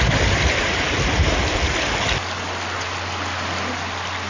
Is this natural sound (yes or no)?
yes